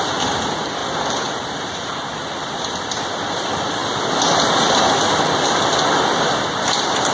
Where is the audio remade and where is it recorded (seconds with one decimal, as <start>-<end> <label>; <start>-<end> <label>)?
0.0-7.1 remade